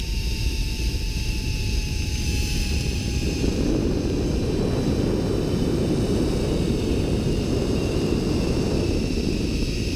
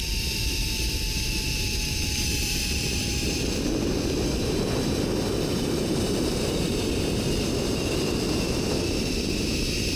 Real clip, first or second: first